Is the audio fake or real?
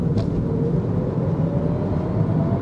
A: real